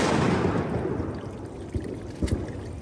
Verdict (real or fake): real